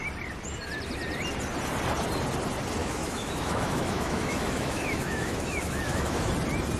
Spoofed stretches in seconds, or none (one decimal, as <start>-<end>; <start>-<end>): 2.8-6.3